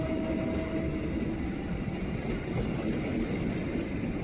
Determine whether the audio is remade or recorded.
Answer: recorded